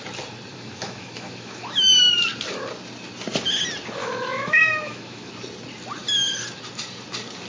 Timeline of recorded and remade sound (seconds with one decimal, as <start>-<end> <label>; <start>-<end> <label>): 0.0-0.5 recorded; 0.5-1.9 remade; 1.9-4.0 recorded; 4.0-5.3 remade; 5.3-7.5 recorded